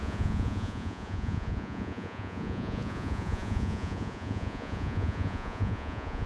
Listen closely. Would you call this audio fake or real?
fake